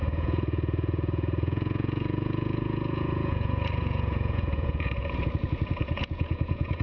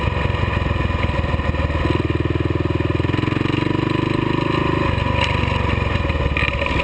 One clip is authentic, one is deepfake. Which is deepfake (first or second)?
first